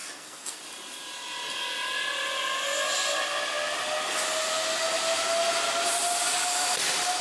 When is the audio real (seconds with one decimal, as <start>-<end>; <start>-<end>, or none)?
0.6-7.2